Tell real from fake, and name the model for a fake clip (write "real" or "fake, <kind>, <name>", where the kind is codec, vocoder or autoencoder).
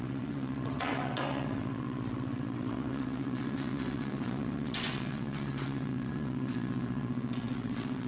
fake, vocoder, WaveNeXt